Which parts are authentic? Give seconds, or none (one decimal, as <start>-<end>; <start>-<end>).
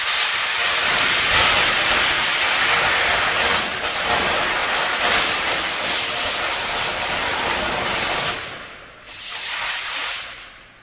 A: 0.0-1.4; 2.1-4.6; 5.9-10.8